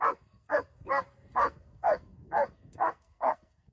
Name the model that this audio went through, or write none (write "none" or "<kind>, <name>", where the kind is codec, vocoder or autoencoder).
codec, SNAC